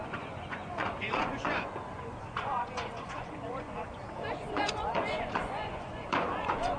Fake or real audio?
fake